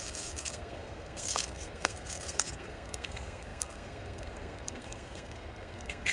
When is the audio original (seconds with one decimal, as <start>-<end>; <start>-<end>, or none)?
none